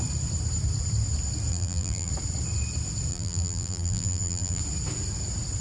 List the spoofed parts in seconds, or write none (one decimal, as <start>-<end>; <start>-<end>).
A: 1.5-2.1; 3.1-4.6